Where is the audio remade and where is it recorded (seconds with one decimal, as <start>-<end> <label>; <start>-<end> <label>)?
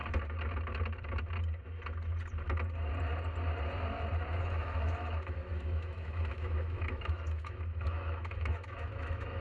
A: 0.0-4.4 recorded; 4.4-9.4 remade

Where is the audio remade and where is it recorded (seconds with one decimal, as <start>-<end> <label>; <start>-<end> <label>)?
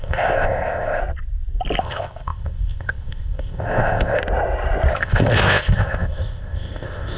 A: 0.0-1.0 remade; 1.0-1.8 recorded; 1.8-4.2 remade; 4.2-4.9 recorded; 4.9-7.2 remade